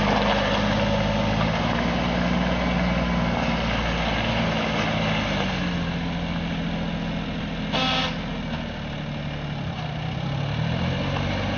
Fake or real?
real